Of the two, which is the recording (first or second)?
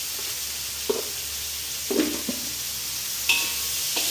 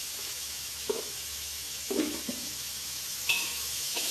first